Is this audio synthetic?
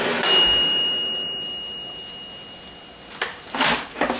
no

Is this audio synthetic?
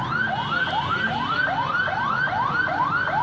no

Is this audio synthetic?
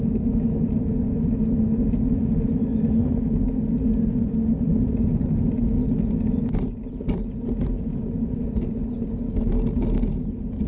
no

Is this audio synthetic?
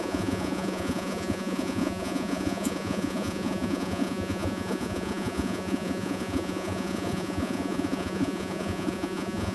yes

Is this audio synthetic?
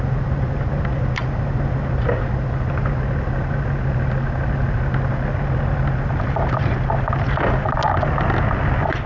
no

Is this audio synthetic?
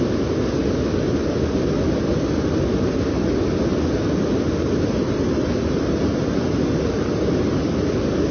no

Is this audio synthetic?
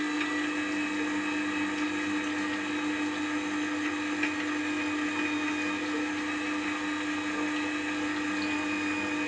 no